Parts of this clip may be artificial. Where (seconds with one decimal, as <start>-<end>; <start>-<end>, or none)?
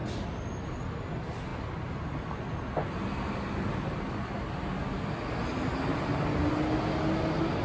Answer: none